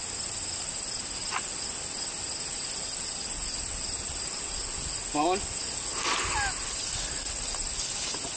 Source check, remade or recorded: recorded